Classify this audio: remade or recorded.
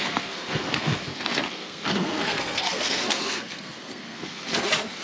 remade